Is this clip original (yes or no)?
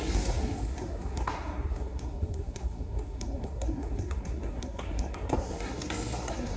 no